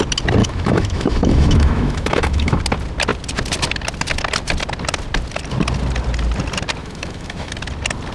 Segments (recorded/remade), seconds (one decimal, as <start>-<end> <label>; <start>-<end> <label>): 0.0-0.4 recorded; 0.4-2.6 remade; 2.6-6.8 recorded; 6.8-7.5 remade; 7.5-8.1 recorded